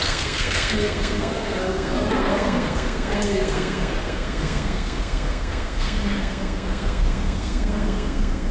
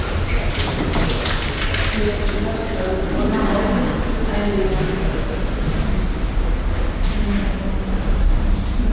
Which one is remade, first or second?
first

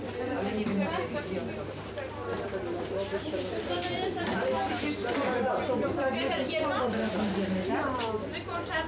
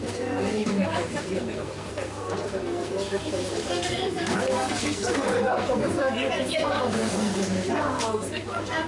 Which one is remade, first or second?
second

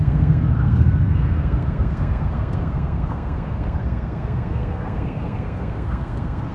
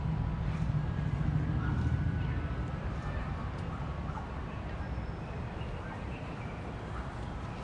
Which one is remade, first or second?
first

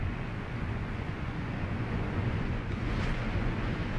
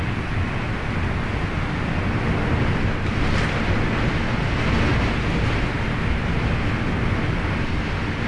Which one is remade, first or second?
first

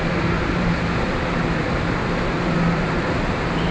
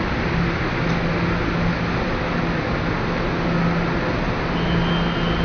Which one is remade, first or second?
first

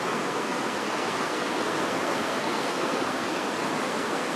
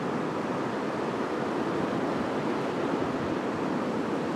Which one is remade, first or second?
first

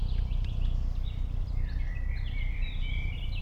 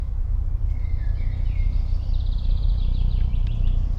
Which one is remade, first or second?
second